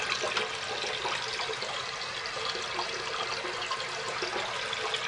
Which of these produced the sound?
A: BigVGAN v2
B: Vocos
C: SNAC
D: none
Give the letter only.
D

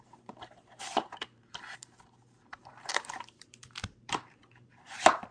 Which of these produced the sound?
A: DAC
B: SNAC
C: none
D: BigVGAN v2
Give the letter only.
D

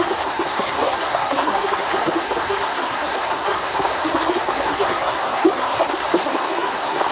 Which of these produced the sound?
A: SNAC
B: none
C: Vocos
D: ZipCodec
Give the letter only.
A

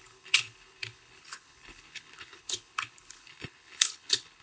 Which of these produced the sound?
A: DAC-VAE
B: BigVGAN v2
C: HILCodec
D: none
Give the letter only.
C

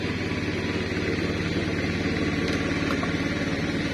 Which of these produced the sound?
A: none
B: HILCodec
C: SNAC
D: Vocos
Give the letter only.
A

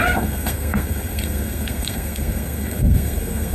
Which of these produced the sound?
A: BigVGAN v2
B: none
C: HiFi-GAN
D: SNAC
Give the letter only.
D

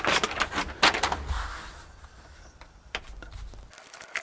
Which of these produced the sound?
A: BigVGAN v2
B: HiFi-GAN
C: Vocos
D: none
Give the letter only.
D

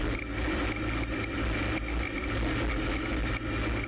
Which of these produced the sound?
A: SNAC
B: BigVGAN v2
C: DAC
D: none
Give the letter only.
D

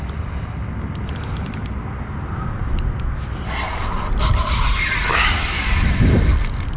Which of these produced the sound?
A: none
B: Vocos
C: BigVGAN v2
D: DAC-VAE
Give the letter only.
A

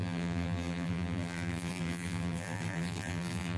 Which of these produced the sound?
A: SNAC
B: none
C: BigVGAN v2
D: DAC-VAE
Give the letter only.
C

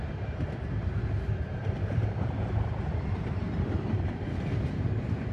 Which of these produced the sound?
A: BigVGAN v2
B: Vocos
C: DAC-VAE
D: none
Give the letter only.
A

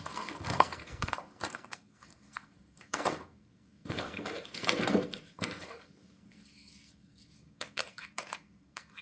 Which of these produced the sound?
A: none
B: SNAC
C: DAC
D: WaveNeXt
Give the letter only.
B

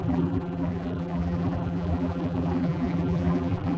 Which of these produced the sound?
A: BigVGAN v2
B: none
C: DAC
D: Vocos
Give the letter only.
A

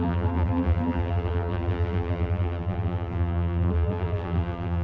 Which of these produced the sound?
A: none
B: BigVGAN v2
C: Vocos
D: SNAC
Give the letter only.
B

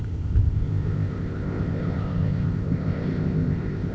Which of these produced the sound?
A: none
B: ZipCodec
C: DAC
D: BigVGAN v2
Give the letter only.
B